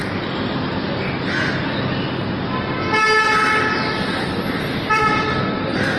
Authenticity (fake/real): real